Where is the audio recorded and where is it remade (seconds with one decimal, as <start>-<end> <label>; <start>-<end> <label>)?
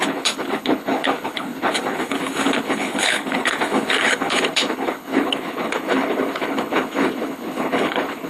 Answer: 0.0-8.3 remade